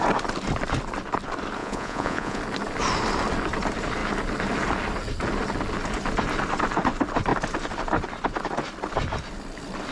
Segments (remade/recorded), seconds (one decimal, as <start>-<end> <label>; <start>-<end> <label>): 0.0-1.6 recorded; 1.6-2.4 remade; 2.4-9.9 recorded